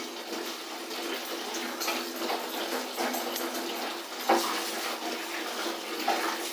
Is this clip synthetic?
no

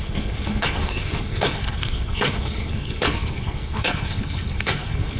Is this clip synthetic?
yes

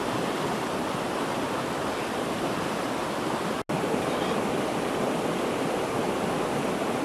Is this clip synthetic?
no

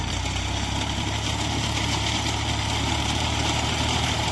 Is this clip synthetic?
yes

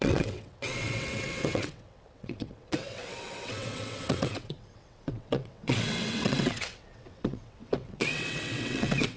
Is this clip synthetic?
yes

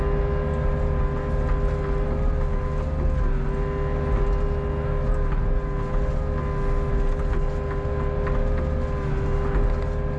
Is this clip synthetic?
no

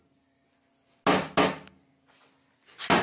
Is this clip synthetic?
no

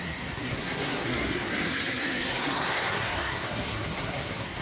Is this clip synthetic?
yes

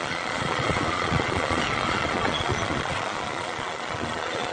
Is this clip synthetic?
yes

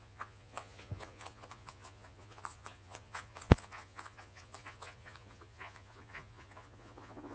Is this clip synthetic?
yes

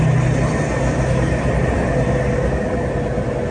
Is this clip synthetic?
no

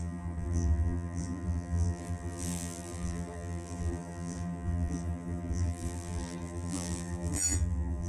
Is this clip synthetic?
yes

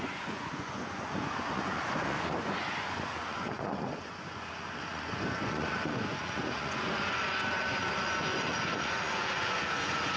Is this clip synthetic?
yes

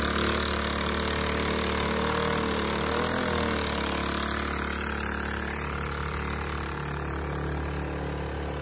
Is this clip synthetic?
no